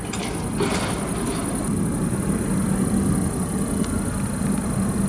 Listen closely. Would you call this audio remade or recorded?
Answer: recorded